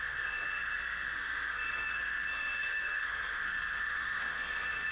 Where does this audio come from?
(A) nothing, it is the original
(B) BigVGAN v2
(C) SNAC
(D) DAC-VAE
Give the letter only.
C